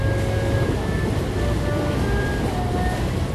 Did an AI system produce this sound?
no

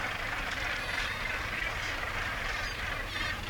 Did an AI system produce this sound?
no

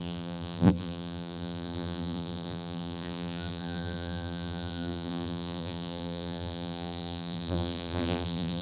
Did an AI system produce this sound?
yes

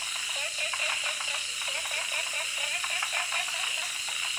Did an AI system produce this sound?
no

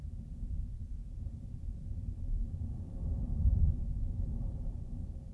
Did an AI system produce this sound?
yes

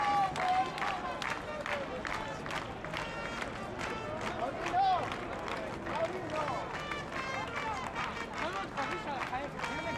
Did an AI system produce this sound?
no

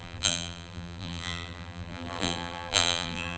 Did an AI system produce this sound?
yes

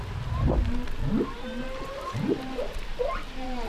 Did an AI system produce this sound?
yes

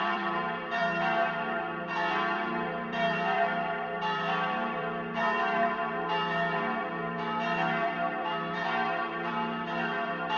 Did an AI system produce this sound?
yes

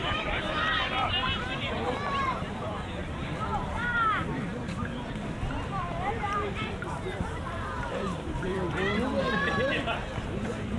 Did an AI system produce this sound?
yes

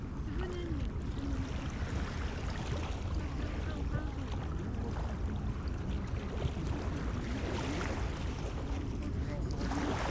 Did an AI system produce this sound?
no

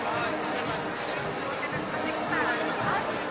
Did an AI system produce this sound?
no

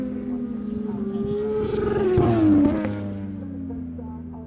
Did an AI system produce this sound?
no